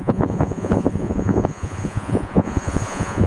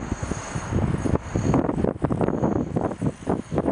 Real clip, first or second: second